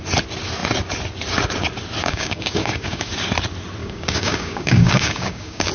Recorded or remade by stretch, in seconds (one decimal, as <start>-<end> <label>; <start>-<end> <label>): 0.0-2.0 recorded; 2.0-3.1 remade; 3.1-3.8 recorded; 3.8-5.7 remade